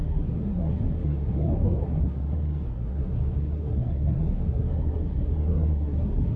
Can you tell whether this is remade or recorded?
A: remade